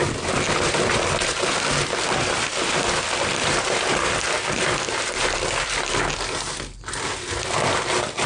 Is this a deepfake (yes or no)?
no